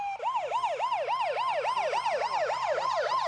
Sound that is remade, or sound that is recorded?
remade